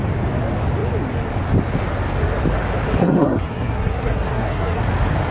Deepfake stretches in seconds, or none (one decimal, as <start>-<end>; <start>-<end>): 3.0-4.8